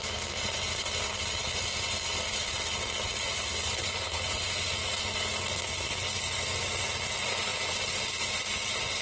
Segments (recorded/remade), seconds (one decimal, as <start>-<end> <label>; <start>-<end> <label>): 0.0-9.0 recorded